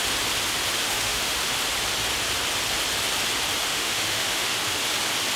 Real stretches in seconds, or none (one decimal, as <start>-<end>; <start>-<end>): 0.0-0.8; 1.4-3.7; 4.5-5.4